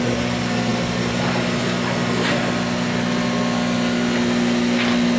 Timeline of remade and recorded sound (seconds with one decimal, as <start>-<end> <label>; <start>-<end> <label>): 0.0-5.2 recorded